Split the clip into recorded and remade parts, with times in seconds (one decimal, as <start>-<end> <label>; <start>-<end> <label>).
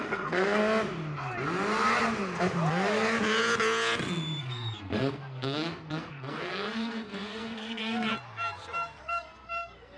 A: 0.0-0.6 remade; 0.6-4.4 recorded; 4.4-8.1 remade; 8.1-9.0 recorded; 9.0-10.0 remade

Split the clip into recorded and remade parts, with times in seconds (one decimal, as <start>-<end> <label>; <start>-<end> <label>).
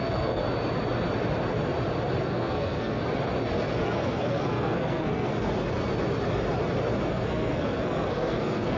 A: 0.0-0.4 remade; 0.4-2.2 recorded; 2.2-3.0 remade; 3.0-3.8 recorded; 3.8-5.3 remade; 5.3-7.1 recorded; 7.1-8.8 remade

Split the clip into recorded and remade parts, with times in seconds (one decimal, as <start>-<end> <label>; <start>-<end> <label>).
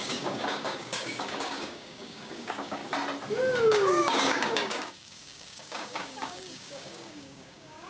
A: 0.0-2.8 remade; 2.8-3.6 recorded; 3.6-7.9 remade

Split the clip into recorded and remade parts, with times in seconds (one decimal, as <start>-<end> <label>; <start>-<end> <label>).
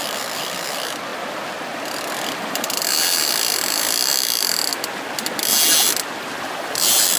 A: 0.0-4.7 remade; 4.7-6.4 recorded; 6.4-7.2 remade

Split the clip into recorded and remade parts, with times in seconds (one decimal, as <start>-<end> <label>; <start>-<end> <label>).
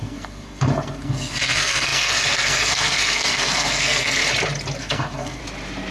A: 0.0-4.2 remade; 4.2-4.8 recorded; 4.8-5.4 remade; 5.4-5.9 recorded